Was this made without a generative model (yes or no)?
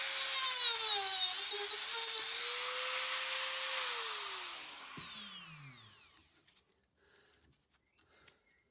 yes